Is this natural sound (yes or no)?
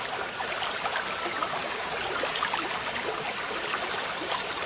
yes